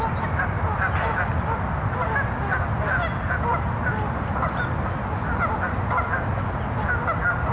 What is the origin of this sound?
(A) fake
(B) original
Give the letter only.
B